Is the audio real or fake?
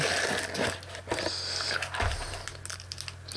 real